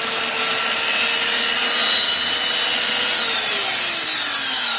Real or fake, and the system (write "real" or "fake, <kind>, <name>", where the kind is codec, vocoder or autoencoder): real